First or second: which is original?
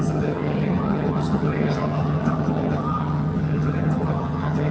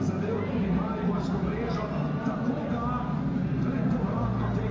second